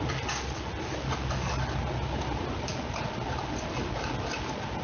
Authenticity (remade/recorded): recorded